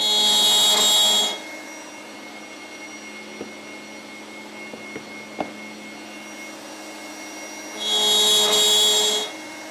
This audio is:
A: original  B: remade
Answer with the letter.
A